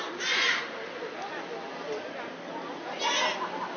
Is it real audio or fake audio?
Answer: real